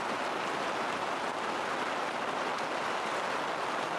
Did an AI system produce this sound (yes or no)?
no